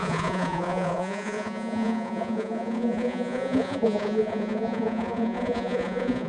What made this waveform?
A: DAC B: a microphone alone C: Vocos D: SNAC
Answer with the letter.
C